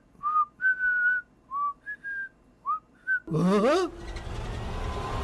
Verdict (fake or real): real